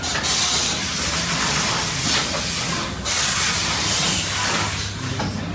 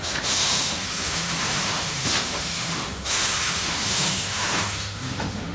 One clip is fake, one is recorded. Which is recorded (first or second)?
first